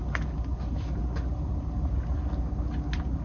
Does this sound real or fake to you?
real